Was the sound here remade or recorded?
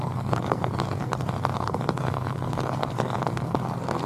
remade